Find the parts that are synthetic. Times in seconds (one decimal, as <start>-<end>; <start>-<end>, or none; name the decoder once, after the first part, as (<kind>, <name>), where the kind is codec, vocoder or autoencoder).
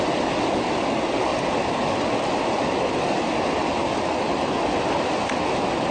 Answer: none